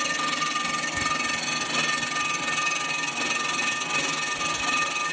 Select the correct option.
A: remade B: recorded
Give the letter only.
B